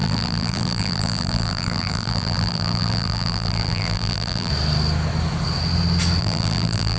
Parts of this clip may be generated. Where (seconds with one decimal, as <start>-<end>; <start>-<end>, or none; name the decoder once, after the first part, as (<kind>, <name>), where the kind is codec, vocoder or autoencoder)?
0.0-4.5 (vocoder, BigVGAN v2); 6.2-7.0